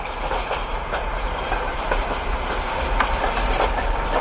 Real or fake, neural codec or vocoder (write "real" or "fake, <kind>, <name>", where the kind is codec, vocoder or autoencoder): fake, vocoder, BigVGAN v2